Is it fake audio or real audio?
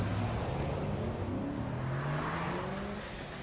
real